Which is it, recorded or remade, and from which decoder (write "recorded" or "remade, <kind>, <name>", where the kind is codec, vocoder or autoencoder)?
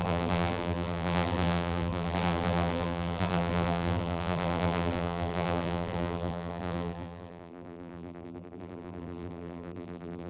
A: remade, vocoder, BigVGAN v2